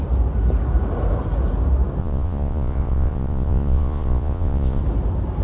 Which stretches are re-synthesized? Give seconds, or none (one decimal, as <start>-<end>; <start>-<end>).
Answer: 2.0-4.8